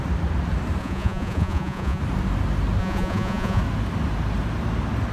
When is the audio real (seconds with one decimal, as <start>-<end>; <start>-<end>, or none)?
0.0-0.8; 2.0-2.8; 3.6-5.1